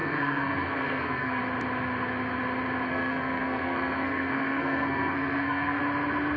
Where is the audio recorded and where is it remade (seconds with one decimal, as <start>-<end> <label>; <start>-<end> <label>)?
0.0-1.4 remade; 1.4-2.9 recorded; 2.9-5.8 remade; 5.8-6.4 recorded